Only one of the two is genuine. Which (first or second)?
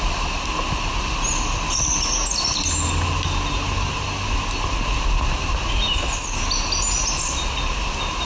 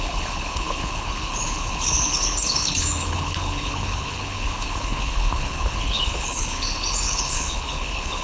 first